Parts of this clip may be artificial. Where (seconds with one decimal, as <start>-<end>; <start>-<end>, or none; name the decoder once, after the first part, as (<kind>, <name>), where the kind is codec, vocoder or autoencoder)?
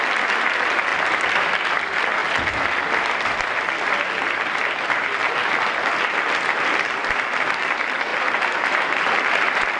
none